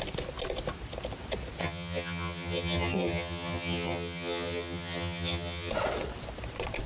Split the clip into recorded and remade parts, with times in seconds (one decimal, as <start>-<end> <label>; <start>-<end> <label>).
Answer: 0.0-1.6 recorded; 1.6-5.7 remade; 5.7-6.9 recorded